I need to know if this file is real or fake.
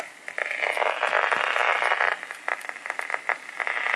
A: real